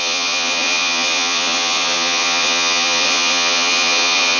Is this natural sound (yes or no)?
no